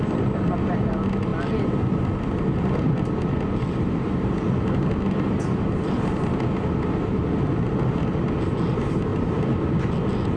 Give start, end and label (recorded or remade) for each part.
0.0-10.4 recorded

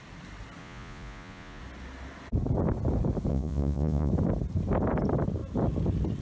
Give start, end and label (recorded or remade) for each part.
0.0-0.6 recorded; 0.6-1.6 remade; 1.6-3.3 recorded; 3.3-4.1 remade; 4.1-6.2 recorded

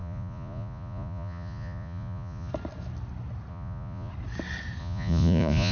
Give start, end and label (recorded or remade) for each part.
0.0-2.5 remade; 2.5-3.5 recorded; 3.5-4.1 remade; 4.1-4.8 recorded; 4.8-5.7 remade

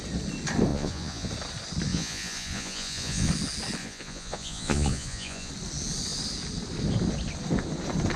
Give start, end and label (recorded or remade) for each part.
0.0-0.7 recorded; 0.7-1.3 remade; 1.3-1.9 recorded; 1.9-3.3 remade; 3.3-3.8 recorded; 3.8-5.5 remade; 5.5-8.2 recorded

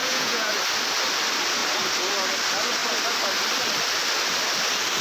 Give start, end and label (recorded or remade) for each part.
0.0-0.5 remade; 0.5-5.0 recorded

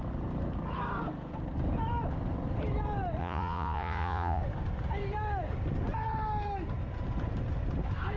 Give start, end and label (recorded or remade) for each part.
0.0-3.2 recorded; 3.2-4.4 remade; 4.4-8.2 recorded